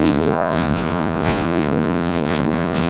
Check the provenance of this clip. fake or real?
fake